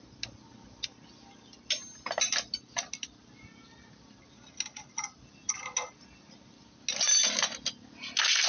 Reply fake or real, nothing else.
real